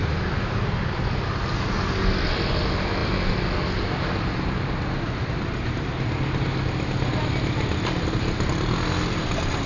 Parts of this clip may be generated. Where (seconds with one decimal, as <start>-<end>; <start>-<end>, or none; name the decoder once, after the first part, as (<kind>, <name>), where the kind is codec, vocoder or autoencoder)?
none